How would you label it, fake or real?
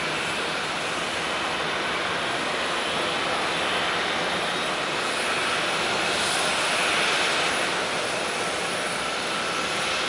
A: real